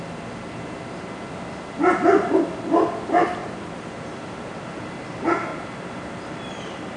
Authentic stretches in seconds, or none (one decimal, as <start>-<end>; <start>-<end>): 0.0-3.4; 4.9-5.5